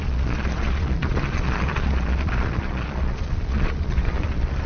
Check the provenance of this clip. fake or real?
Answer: fake